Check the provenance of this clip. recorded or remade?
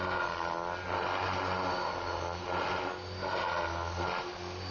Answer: recorded